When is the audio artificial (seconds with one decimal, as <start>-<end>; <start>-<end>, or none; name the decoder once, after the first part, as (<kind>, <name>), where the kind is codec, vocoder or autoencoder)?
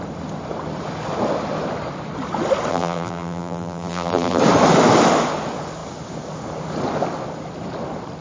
2.7-4.4 (vocoder, BigVGAN v2)